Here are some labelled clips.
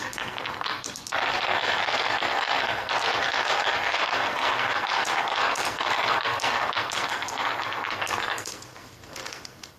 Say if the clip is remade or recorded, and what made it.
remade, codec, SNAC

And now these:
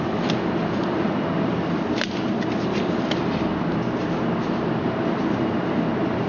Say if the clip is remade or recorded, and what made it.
recorded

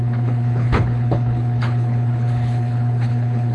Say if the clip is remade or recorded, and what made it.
remade, codec, HILCodec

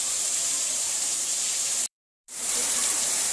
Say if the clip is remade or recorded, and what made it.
remade, vocoder, BigVGAN v2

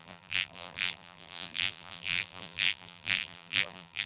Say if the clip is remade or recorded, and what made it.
remade, vocoder, BigVGAN v2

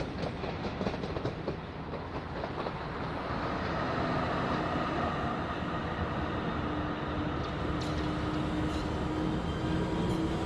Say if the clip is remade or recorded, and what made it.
recorded